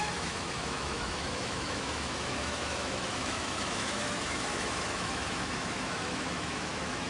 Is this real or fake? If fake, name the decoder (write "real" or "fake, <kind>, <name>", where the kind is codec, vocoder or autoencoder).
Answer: fake, autoencoder, DAC-VAE